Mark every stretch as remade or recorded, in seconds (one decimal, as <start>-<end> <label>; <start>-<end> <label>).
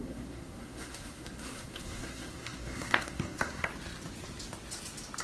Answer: 0.0-3.7 remade; 3.7-5.2 recorded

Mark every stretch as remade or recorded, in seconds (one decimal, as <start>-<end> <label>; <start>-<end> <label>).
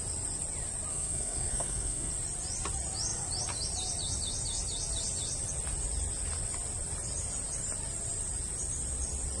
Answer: 0.0-0.9 recorded; 0.9-2.1 remade; 2.1-9.4 recorded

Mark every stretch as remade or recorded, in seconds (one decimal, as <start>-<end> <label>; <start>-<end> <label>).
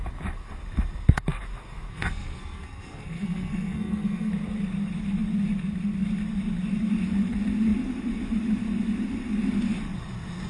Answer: 0.0-1.9 recorded; 1.9-4.3 remade; 4.3-10.5 recorded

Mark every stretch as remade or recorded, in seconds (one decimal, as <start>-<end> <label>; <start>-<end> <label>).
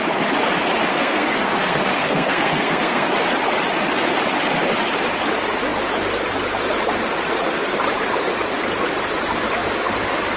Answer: 0.0-0.9 recorded; 0.9-3.1 remade; 3.1-10.4 recorded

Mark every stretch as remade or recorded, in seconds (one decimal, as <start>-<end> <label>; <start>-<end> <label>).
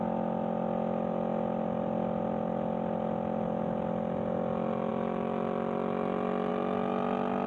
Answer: 0.0-7.5 recorded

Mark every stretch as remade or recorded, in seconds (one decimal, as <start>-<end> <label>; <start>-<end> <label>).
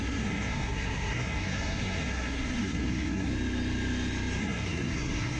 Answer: 0.0-3.3 remade; 3.3-4.4 recorded; 4.4-5.4 remade